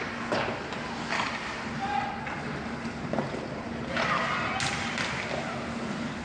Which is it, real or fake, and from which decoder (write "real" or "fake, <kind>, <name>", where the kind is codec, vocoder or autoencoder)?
real